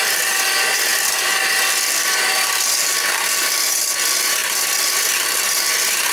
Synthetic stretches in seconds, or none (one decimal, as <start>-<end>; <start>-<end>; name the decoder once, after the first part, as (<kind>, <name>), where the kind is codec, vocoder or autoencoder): none